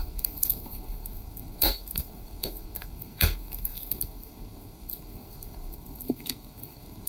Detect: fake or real fake